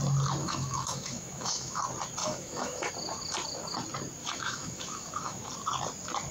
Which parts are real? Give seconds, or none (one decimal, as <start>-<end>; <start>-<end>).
0.0-0.4; 1.8-2.2; 2.9-4.2; 5.5-6.3